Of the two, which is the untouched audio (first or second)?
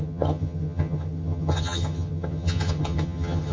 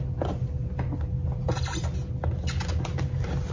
second